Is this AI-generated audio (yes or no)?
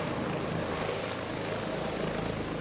no